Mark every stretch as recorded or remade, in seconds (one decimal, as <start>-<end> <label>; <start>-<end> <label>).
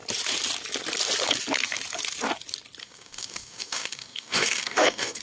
0.0-2.8 recorded; 2.8-5.2 remade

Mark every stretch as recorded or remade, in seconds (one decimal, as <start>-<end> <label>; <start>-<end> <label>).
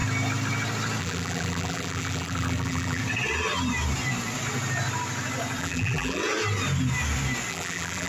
0.0-1.0 recorded; 1.0-3.0 remade; 3.0-5.6 recorded; 5.6-6.2 remade; 6.2-7.5 recorded; 7.5-8.1 remade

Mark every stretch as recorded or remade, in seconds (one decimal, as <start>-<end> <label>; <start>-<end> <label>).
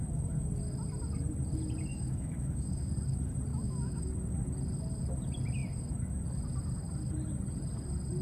0.0-1.9 recorded; 1.9-2.9 remade; 2.9-3.5 recorded; 3.5-4.1 remade; 4.1-8.2 recorded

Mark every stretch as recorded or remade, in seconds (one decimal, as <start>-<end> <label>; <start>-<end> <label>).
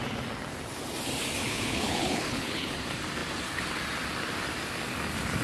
0.0-1.4 recorded; 1.4-2.7 remade; 2.7-5.4 recorded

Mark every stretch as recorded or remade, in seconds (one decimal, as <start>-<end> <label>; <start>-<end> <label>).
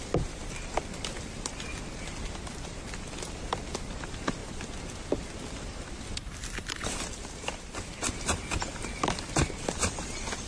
0.0-10.5 remade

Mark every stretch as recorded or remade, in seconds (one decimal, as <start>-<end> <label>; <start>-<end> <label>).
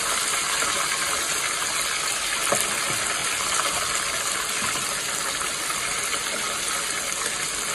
0.0-7.7 recorded